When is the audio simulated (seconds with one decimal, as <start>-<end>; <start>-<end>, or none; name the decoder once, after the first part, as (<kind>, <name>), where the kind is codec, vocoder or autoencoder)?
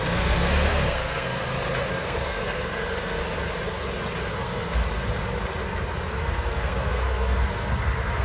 0.0-1.4 (codec, SNAC); 1.9-3.2; 4.3-4.8; 6.2-8.2